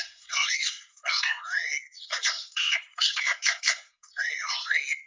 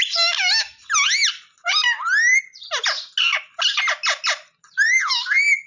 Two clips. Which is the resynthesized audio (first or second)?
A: first